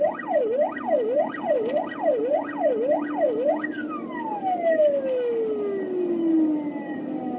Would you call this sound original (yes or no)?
yes